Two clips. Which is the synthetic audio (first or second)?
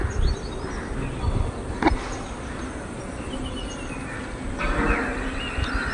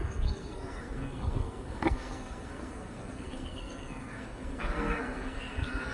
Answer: second